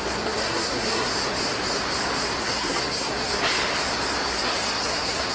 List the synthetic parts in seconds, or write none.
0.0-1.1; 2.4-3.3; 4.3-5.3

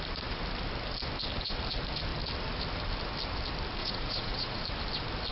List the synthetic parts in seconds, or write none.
3.8-4.6

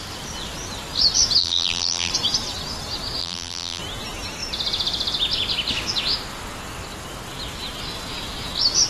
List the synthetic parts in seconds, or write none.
1.4-2.1; 3.2-3.8

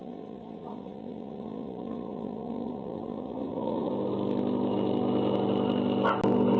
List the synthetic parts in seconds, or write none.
0.0-3.9

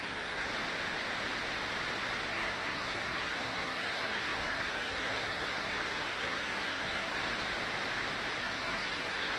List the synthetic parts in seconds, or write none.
0.0-0.5; 2.3-7.2; 8.4-9.4

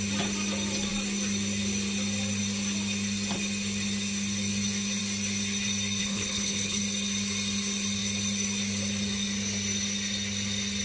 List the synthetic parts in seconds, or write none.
6.0-6.8